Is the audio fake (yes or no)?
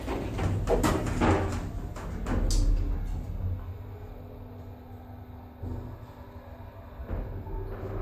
no